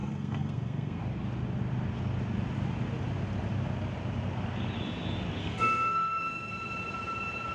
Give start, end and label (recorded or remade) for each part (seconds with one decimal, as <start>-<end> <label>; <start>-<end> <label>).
0.0-1.0 remade; 1.0-5.4 recorded; 5.4-6.5 remade; 6.5-7.5 recorded